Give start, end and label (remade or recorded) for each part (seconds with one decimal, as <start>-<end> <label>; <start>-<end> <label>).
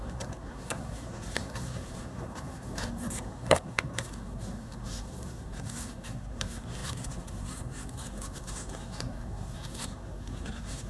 0.0-10.9 remade